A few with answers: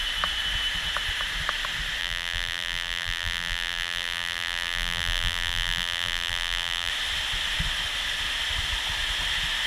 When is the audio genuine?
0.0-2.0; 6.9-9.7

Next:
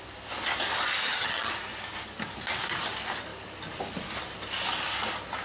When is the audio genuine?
0.0-1.0; 1.5-5.4

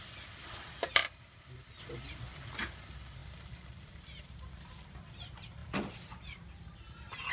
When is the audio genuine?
1.0-1.8; 3.2-3.8; 5.6-7.3

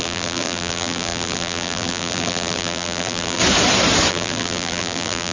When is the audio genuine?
3.4-4.1

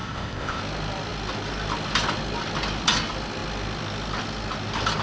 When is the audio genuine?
0.6-5.0

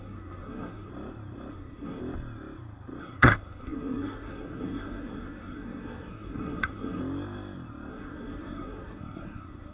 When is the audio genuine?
0.9-1.5; 2.0-3.0; 7.0-7.9

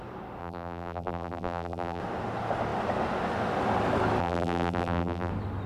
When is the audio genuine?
0.0-0.4; 2.0-4.2; 5.3-5.7

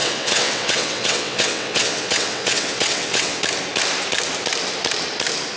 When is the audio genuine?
3.4-5.6